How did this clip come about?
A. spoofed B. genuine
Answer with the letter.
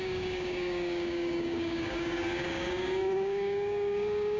A